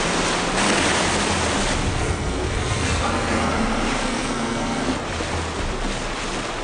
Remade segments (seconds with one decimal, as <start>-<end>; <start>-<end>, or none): 1.9-3.5; 4.0-5.0